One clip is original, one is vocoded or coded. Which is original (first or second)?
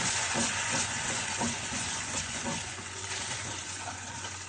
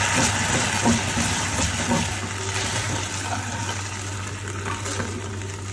second